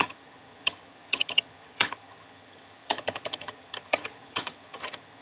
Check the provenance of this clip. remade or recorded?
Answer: remade